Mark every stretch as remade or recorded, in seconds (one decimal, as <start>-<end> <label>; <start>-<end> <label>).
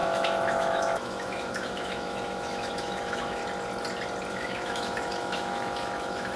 0.0-3.4 remade; 3.4-4.3 recorded; 4.3-6.4 remade